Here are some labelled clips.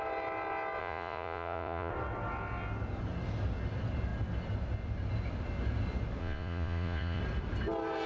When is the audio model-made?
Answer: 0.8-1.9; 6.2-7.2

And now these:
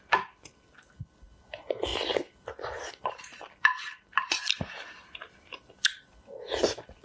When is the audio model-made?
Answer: none

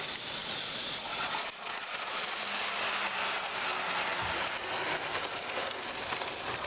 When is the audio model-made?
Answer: 0.4-2.4

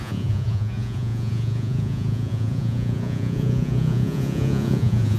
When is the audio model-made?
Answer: 0.0-5.2